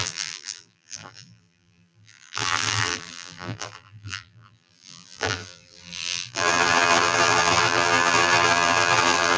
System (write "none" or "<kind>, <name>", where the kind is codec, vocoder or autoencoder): vocoder, BigVGAN v2